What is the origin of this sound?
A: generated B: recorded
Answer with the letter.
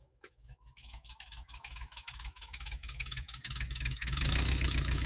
A